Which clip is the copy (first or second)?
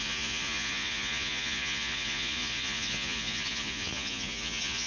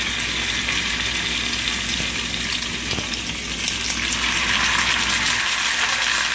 first